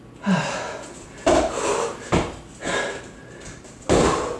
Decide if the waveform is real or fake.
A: real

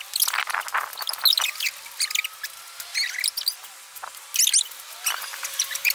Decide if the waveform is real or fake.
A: real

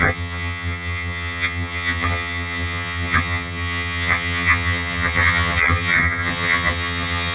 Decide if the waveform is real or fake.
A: fake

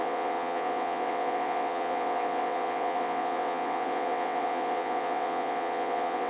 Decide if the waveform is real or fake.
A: fake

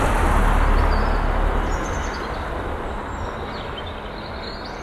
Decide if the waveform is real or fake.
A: real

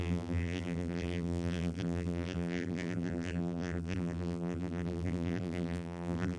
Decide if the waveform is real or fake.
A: fake